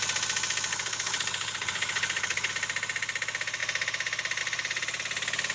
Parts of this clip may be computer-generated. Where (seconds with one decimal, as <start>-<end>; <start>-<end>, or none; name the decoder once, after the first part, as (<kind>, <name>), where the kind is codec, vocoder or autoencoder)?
0.7-2.5 (codec, HILCodec)